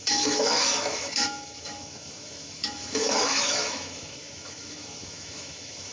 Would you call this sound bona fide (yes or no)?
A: no